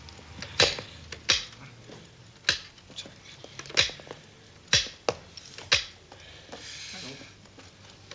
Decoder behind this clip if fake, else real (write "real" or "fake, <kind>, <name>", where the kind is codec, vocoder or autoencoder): real